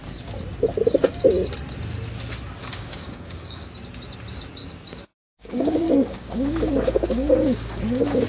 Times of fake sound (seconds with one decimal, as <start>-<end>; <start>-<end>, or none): 2.6-3.7; 4.6-8.3